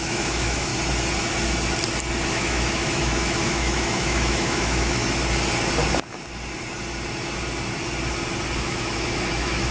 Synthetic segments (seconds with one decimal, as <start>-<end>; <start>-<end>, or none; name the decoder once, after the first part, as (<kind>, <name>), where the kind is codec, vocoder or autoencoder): 0.0-0.7 (autoencoder, DAC-VAE); 2.3-5.0; 8.6-9.7